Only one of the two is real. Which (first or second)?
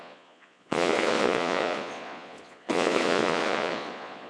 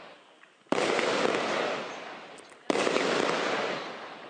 second